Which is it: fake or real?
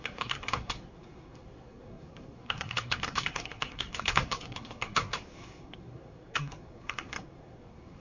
fake